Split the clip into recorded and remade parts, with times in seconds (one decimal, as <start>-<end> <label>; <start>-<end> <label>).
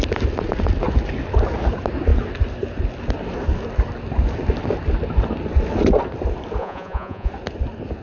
0.0-6.6 recorded; 6.6-7.3 remade; 7.3-8.0 recorded